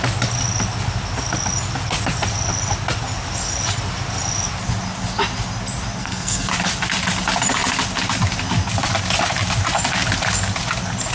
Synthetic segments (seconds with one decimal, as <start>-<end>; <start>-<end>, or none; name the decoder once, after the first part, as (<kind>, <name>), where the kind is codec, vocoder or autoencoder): 6.0-6.5 (codec, SNAC)